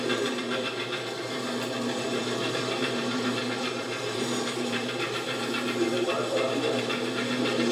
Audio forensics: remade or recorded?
remade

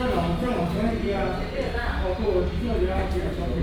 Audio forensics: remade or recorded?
remade